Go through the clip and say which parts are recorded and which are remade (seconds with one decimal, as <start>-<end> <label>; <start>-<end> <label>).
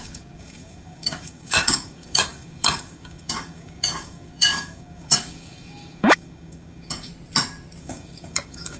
0.0-7.1 remade; 7.1-7.8 recorded; 7.8-8.8 remade